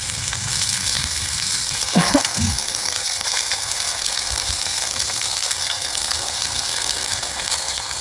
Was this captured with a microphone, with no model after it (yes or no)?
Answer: no